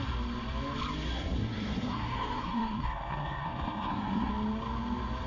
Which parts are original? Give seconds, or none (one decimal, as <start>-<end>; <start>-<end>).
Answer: 0.0-1.1; 4.3-5.3